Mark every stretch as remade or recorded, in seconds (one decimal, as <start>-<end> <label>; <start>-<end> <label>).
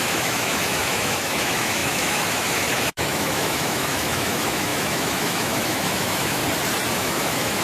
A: 0.0-6.4 remade; 6.4-6.9 recorded; 6.9-7.6 remade